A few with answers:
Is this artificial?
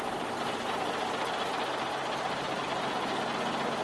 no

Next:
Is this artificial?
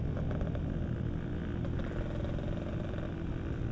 no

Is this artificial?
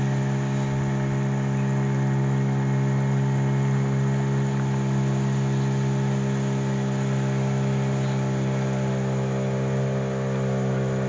no